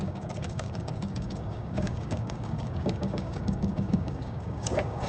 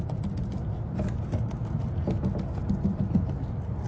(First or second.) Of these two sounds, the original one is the second